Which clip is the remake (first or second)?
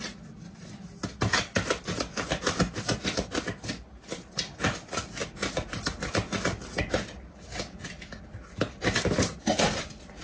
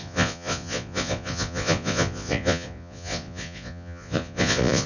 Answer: second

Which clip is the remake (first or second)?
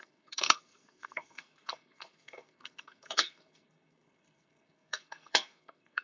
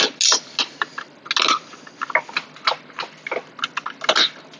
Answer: first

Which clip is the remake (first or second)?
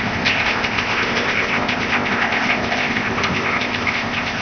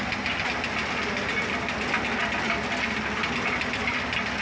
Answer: first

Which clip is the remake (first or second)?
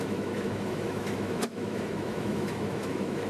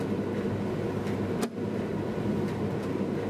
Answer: first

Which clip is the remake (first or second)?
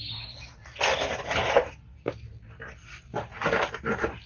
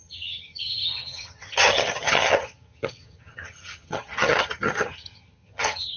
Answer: second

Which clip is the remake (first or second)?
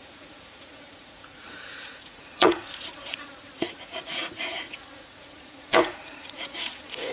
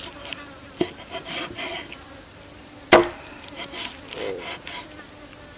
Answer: first